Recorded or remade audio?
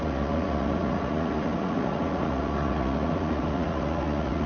remade